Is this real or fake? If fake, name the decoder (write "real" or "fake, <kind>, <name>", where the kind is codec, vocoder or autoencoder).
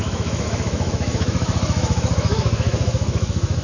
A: fake, autoencoder, DAC-VAE